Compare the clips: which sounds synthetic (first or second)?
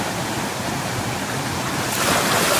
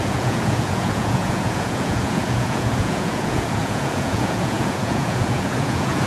second